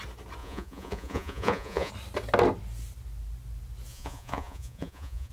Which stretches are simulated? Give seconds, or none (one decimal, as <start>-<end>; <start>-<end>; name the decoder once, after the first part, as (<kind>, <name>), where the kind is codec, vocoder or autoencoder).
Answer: 0.4-1.9 (vocoder, Vocos); 3.9-5.3